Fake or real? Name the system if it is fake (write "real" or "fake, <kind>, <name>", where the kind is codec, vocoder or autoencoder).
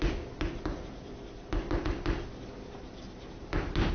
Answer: real